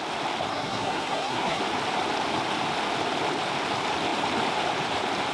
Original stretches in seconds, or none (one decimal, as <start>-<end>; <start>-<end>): 0.0-0.5; 1.6-5.3